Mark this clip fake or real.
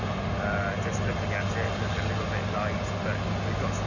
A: real